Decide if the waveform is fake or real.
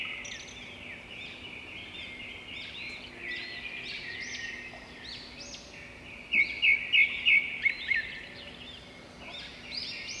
real